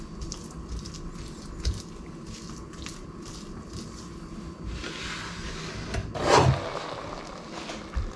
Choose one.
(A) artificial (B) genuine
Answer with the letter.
B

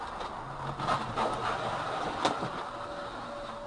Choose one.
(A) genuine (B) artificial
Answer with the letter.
A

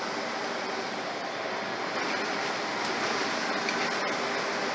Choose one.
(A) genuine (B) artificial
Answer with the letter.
A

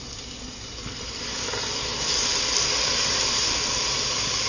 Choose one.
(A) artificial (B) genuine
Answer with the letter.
B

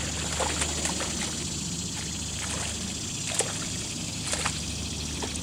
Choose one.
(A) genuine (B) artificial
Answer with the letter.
A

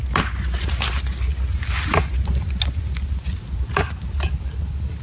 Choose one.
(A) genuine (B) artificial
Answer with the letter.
A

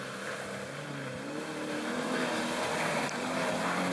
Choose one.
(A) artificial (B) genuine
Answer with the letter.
B